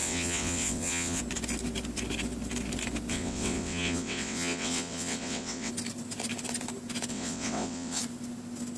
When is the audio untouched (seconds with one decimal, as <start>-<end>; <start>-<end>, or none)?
1.2-3.1; 5.7-7.1; 8.0-8.8